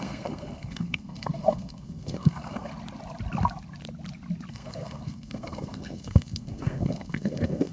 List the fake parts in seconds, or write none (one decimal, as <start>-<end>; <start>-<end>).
0.0-2.7; 4.5-7.7